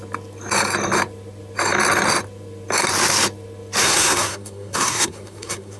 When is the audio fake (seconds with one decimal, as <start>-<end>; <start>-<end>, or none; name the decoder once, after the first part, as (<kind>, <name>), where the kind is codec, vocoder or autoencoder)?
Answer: 3.8-5.8 (codec, SNAC)

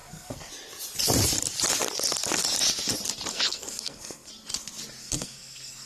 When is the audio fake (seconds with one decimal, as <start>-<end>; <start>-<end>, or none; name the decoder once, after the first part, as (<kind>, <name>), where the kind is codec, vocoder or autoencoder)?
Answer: 0.0-0.5 (codec, SNAC); 3.3-4.3; 5.0-5.9